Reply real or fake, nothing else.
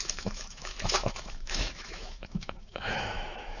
fake